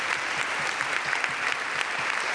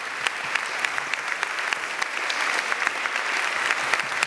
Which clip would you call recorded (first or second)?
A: second